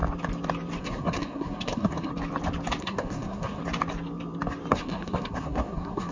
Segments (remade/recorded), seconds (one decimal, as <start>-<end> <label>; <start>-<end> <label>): 0.0-0.8 recorded; 0.8-2.1 remade; 2.1-2.8 recorded; 2.8-3.6 remade; 3.6-4.7 recorded; 4.7-6.1 remade